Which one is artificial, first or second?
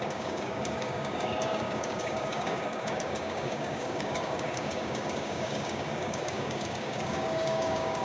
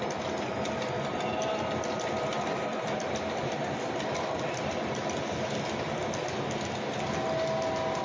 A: first